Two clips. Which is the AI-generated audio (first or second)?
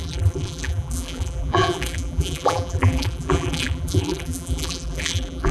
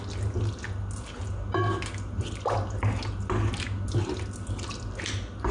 first